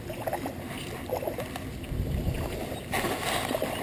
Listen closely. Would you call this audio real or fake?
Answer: real